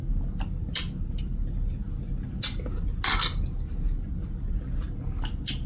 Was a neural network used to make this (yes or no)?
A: no